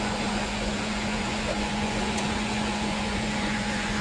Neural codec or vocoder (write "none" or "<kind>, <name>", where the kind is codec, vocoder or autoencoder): vocoder, Vocos